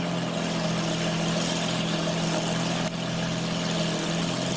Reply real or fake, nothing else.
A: real